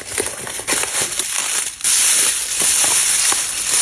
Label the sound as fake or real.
real